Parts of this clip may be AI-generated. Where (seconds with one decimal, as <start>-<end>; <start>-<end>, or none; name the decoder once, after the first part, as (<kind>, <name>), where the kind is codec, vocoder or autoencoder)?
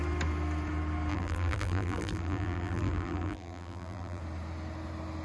1.1-4.2 (vocoder, BigVGAN v2)